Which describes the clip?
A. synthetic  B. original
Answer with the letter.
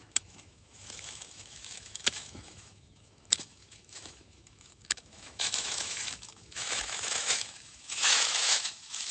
A